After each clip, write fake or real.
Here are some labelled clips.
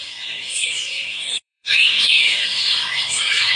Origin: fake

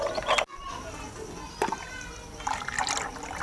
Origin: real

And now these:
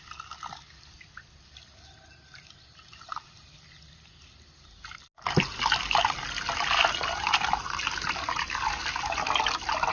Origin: real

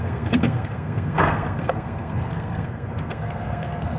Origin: fake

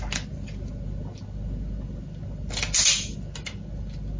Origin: real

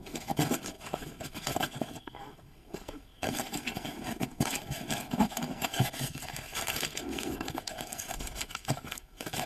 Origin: fake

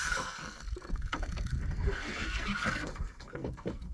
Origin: fake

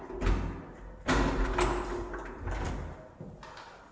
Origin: real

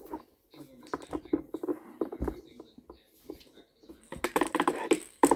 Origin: real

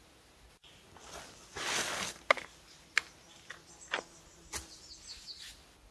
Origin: real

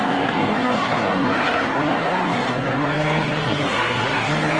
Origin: fake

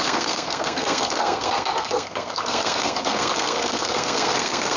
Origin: fake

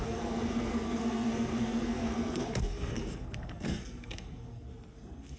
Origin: fake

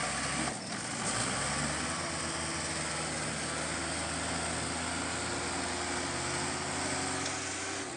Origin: real